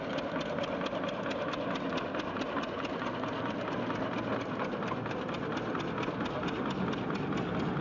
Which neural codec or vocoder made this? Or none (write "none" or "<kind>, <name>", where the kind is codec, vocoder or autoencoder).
none